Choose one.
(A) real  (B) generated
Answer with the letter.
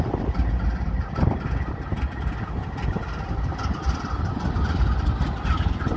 A